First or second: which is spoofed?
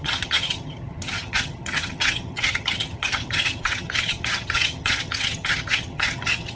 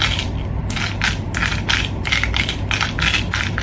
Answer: first